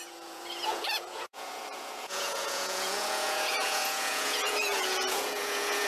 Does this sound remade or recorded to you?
remade